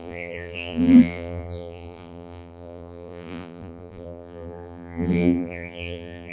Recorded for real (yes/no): no